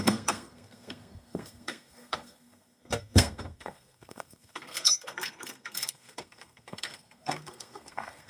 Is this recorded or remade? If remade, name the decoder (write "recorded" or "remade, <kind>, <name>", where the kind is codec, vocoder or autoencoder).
remade, codec, SNAC